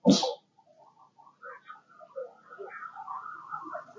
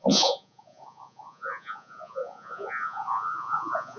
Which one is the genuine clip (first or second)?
first